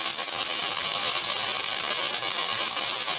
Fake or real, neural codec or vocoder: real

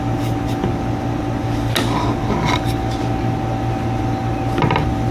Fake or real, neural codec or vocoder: real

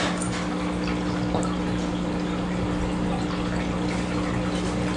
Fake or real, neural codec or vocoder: real